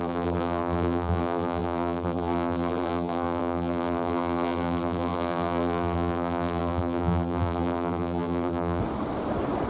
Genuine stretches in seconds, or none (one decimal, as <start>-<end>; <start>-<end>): 8.8-9.7